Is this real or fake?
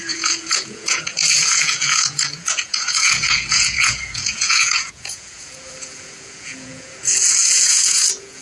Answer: fake